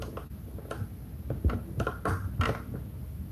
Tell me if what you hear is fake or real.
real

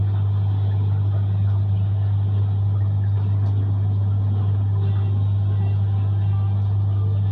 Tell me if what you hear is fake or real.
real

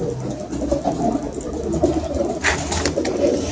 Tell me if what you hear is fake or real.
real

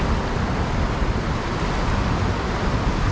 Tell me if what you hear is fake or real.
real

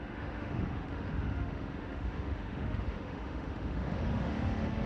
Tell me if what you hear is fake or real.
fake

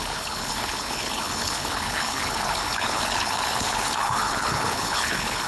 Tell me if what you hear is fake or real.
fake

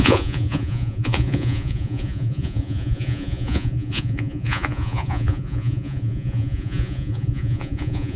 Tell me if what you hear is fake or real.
fake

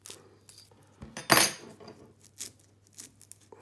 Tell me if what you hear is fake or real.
real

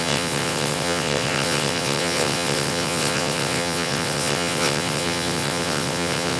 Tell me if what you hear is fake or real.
fake